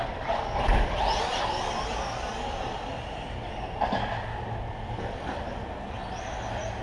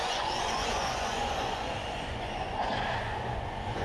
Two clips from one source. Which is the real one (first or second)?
first